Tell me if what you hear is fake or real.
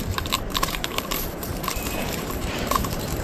fake